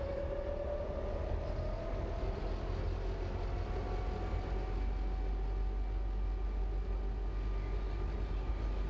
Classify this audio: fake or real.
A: real